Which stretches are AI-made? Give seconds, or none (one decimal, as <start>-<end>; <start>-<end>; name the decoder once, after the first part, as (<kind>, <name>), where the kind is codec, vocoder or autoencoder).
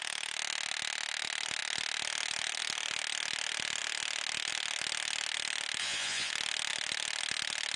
5.8-6.3 (vocoder, Vocos)